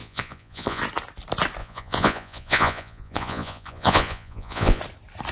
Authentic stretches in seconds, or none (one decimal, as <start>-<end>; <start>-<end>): 0.8-1.6; 4.8-5.3